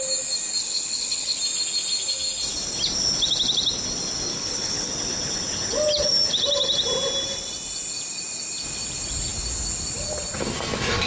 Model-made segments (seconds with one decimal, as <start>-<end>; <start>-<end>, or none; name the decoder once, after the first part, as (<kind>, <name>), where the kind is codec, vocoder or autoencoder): 0.6-1.4 (codec, HILCodec); 4.3-4.9